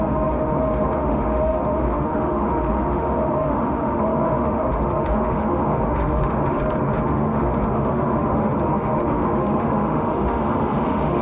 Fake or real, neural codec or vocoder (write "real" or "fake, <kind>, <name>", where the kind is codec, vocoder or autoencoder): fake, autoencoder, DAC-VAE